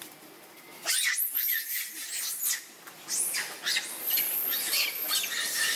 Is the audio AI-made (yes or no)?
no